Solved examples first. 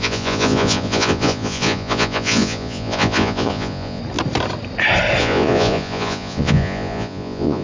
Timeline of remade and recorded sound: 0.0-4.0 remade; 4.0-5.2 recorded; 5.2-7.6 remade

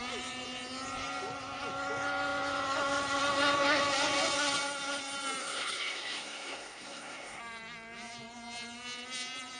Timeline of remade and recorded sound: 0.0-5.4 recorded; 5.4-7.4 remade; 7.4-9.6 recorded

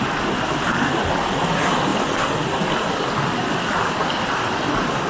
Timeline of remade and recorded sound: 0.0-5.1 recorded

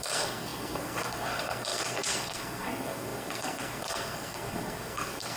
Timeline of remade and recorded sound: 0.0-5.4 remade

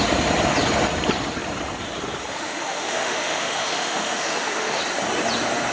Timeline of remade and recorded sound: 0.0-2.3 recorded; 2.3-4.8 remade; 4.8-5.7 recorded